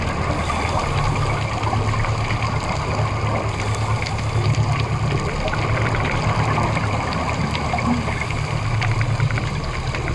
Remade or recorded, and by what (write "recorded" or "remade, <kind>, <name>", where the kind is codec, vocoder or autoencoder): recorded